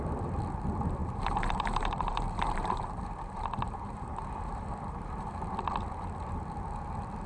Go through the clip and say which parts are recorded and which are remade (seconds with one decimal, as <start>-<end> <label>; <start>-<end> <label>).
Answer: 0.0-1.0 recorded; 1.0-5.4 remade; 5.4-7.3 recorded